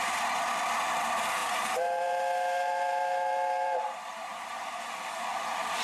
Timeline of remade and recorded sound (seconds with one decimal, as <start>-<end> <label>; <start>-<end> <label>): 0.0-1.4 recorded; 1.4-4.9 remade; 4.9-5.8 recorded